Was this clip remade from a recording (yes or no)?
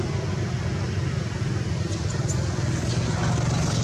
no